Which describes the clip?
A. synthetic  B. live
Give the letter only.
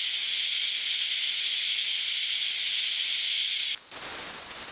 B